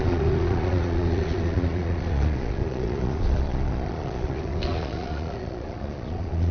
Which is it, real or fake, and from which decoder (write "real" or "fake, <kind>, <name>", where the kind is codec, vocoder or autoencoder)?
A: fake, vocoder, Vocos